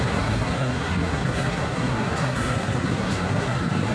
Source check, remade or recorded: remade